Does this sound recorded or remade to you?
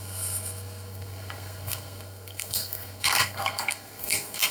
remade